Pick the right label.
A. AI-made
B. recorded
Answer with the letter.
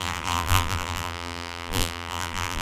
A